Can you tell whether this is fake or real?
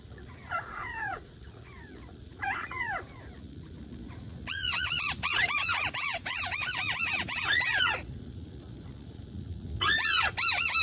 fake